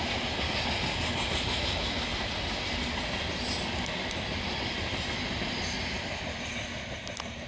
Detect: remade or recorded recorded